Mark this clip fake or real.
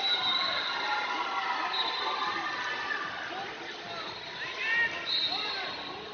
real